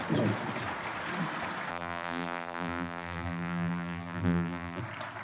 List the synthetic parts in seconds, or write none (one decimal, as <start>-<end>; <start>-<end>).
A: 1.7-4.8